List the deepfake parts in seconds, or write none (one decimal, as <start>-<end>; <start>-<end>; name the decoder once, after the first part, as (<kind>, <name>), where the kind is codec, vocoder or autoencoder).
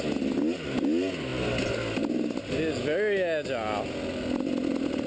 none